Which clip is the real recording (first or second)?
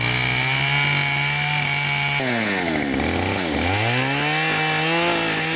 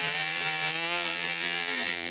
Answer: first